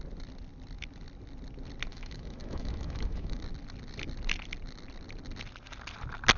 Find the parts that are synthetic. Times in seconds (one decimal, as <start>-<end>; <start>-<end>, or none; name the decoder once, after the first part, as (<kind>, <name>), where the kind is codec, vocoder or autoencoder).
1.9-3.4 (autoencoder, DAC-VAE)